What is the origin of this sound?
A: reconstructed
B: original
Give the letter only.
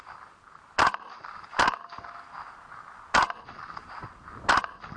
B